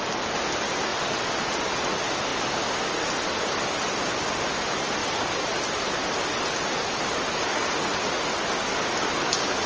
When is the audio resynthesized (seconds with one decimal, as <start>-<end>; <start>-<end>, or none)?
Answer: 0.9-1.8